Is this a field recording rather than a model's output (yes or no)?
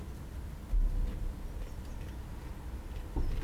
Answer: yes